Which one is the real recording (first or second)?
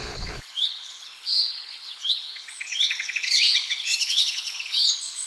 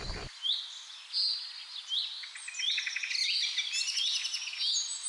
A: second